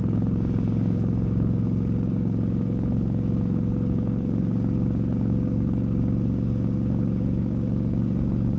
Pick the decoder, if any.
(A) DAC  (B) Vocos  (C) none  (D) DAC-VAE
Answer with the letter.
A